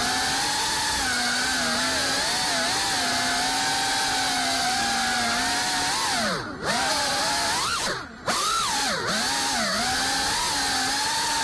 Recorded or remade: recorded